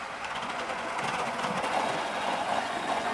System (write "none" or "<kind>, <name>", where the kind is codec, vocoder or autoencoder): vocoder, Vocos